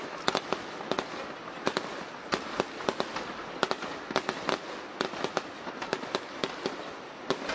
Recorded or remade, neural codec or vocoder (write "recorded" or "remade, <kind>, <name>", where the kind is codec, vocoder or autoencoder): recorded